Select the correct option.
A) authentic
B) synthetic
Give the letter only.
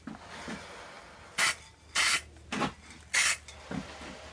A